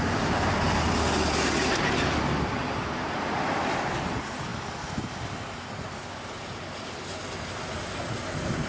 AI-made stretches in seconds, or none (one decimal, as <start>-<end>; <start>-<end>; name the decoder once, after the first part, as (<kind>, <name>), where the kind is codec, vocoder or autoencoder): none